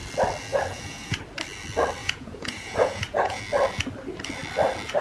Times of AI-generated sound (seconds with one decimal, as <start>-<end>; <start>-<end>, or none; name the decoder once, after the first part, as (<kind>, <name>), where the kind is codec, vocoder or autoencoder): 0.5-1.2 (vocoder, Vocos); 2.0-3.4